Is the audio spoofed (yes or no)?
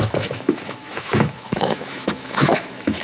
yes